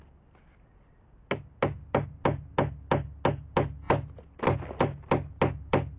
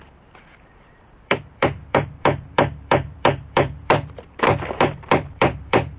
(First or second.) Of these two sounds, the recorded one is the first